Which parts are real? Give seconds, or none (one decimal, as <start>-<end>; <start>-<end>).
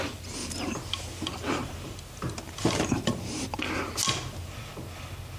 0.0-0.4; 3.6-5.4